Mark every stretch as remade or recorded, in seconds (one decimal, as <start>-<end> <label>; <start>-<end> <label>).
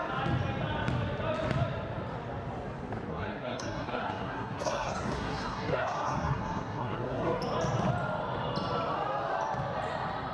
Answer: 0.0-3.1 recorded; 3.1-7.4 remade; 7.4-10.3 recorded